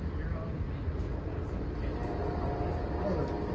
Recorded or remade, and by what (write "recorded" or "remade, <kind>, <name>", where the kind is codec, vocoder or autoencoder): recorded